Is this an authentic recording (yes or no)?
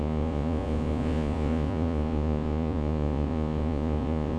no